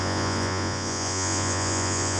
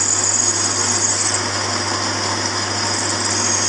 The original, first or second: second